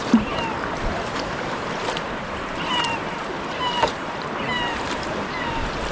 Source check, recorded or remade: remade